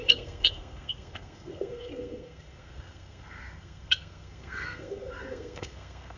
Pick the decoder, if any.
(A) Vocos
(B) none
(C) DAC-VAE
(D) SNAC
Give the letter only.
D